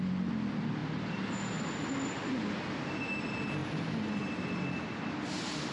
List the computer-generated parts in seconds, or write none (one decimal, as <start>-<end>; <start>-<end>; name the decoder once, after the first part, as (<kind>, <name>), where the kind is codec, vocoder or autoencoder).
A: none